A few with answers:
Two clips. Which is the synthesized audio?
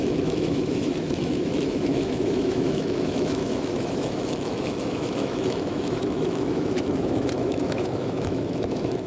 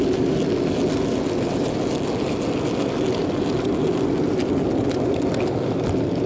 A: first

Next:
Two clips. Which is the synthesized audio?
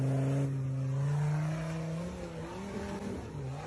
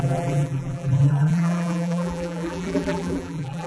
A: second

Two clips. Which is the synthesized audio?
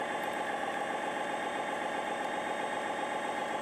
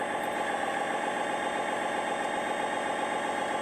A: first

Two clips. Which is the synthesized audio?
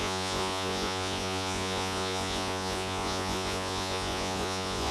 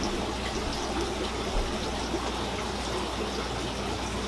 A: first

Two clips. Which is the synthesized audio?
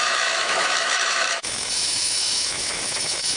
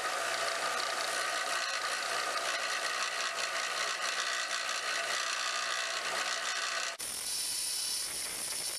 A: first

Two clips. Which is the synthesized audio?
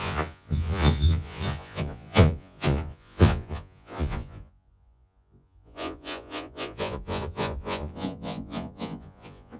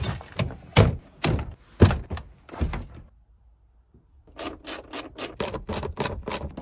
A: first